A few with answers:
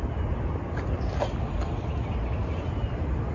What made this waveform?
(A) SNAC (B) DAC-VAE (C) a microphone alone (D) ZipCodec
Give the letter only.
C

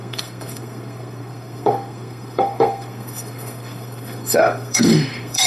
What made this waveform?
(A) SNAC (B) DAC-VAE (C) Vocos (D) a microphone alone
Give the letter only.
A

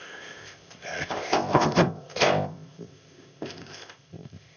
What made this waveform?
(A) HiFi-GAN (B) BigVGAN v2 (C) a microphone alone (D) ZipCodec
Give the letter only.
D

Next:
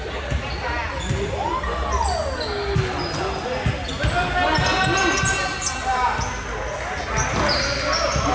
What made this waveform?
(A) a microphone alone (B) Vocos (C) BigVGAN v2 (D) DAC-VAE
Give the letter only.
A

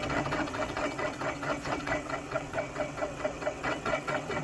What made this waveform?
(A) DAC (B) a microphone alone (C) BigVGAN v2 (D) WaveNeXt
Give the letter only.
D